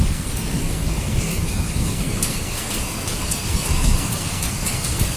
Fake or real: fake